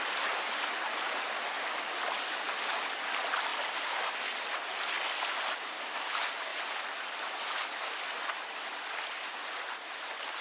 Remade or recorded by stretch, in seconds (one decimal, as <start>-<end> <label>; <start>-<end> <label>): 0.0-10.4 recorded